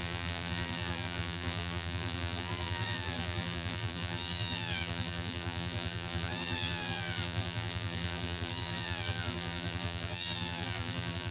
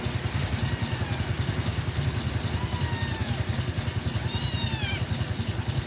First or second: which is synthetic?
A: first